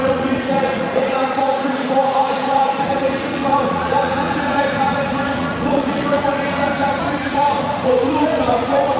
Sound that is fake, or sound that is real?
fake